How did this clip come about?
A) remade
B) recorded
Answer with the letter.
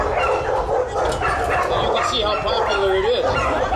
B